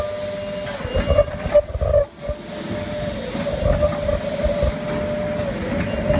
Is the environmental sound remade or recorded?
recorded